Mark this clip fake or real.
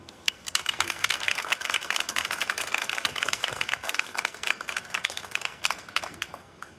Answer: fake